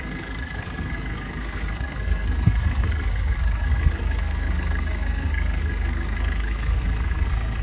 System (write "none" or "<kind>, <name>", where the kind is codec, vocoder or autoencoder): codec, SNAC